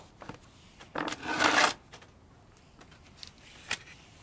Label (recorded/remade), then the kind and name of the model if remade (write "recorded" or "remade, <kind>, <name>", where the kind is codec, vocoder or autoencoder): recorded